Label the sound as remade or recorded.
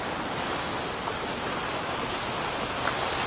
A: recorded